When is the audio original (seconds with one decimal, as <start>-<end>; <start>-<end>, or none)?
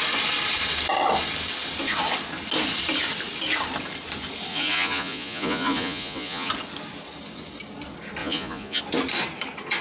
0.0-4.5; 6.5-8.2; 8.8-9.8